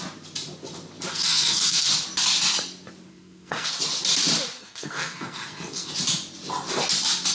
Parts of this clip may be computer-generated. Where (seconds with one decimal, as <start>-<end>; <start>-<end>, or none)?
1.1-1.9; 3.1-3.7; 4.6-5.9